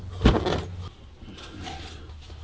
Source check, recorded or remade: recorded